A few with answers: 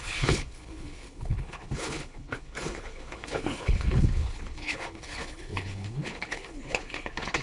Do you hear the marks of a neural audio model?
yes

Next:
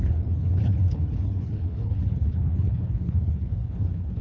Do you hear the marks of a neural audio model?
yes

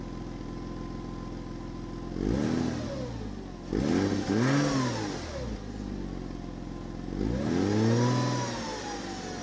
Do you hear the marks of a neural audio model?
no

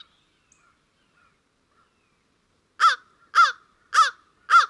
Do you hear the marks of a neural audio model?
no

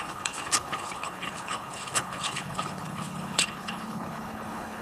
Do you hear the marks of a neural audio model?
yes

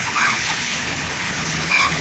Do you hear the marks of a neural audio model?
yes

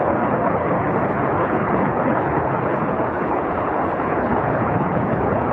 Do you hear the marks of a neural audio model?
yes